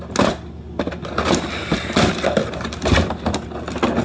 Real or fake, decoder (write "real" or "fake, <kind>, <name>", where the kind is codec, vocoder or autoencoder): real